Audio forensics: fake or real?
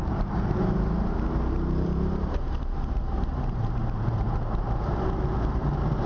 fake